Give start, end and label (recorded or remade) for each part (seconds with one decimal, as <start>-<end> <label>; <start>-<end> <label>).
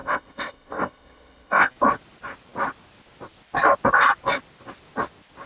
0.0-1.7 remade; 1.7-5.5 recorded